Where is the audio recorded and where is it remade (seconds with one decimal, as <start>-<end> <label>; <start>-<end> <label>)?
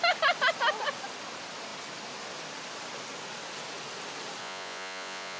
0.0-4.4 recorded; 4.4-5.4 remade